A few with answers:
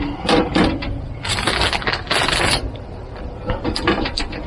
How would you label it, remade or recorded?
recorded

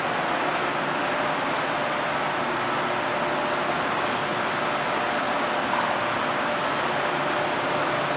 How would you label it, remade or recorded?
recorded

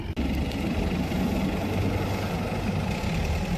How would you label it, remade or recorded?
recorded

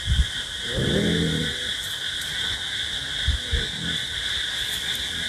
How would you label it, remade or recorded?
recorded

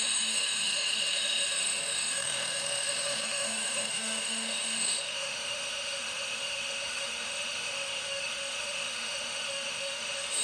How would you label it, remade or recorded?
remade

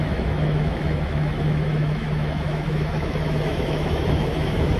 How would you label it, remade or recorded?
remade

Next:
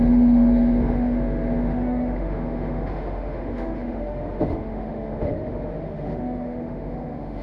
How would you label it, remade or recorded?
remade